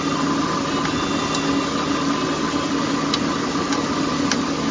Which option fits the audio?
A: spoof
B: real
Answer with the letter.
B